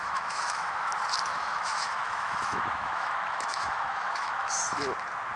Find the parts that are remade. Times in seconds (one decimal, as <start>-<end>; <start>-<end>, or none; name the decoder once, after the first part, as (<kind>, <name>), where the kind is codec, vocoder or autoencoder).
0.0-0.9 (autoencoder, DAC-VAE); 1.3-4.5